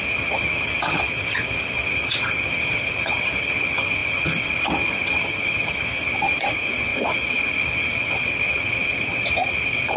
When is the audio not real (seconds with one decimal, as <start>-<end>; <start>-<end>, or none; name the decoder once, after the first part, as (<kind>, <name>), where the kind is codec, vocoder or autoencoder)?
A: 0.0-10.0 (vocoder, HiFi-GAN)